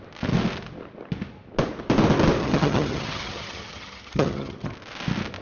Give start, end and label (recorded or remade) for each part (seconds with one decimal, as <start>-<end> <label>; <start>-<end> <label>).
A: 0.0-2.4 recorded; 2.4-4.7 remade; 4.7-5.4 recorded

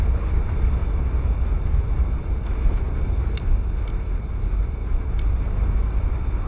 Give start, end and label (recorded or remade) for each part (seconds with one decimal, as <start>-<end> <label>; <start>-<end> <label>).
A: 0.0-0.8 remade; 0.8-4.1 recorded; 4.1-6.5 remade

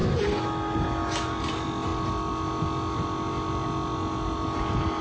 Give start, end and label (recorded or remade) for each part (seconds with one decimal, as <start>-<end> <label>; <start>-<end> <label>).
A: 0.0-5.0 recorded